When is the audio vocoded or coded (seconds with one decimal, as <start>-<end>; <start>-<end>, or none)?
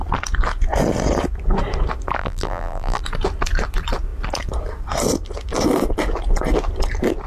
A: 2.2-3.0